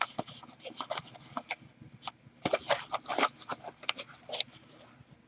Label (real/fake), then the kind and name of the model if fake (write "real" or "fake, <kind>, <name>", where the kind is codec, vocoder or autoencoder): real